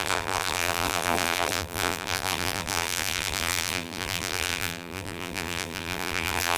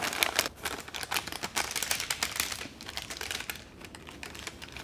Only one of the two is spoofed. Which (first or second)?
first